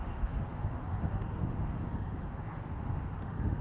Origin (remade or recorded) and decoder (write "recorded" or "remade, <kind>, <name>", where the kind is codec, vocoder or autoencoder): remade, autoencoder, DAC-VAE